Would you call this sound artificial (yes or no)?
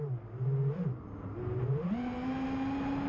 no